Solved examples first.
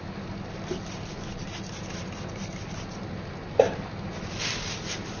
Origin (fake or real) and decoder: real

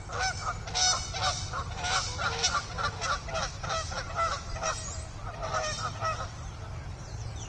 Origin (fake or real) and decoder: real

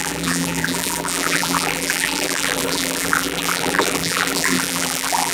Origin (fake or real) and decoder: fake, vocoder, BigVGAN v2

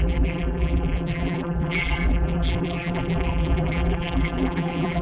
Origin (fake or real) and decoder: fake, vocoder, BigVGAN v2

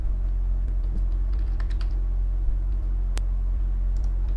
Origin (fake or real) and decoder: real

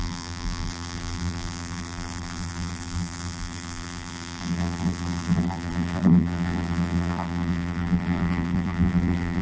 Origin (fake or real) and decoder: fake, vocoder, BigVGAN v2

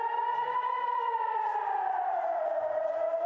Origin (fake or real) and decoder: fake, vocoder, BigVGAN v2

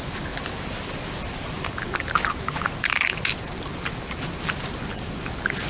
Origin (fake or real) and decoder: real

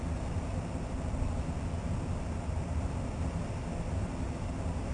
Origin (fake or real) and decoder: fake, vocoder, BigVGAN v2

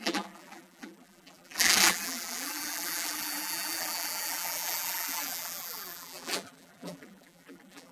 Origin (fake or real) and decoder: fake, vocoder, BigVGAN v2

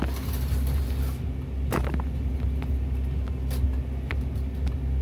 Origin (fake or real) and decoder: real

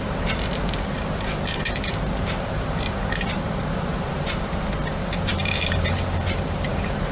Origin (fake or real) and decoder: fake, vocoder, BigVGAN v2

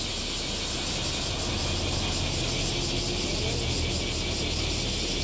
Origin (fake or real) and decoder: real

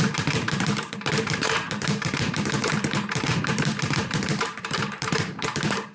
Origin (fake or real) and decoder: fake, vocoder, BigVGAN v2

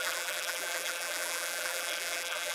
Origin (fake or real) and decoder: fake, vocoder, BigVGAN v2